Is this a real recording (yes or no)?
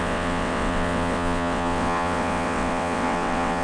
no